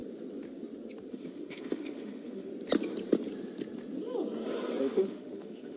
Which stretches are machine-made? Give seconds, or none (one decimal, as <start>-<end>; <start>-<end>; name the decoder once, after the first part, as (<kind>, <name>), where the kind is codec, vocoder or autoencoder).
1.1-2.5 (autoencoder, DAC-VAE); 4.8-5.8